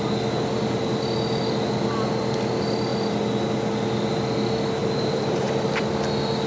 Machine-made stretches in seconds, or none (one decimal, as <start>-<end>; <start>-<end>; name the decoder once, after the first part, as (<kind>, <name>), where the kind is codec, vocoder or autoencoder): 4.8-5.7 (vocoder, BigVGAN v2)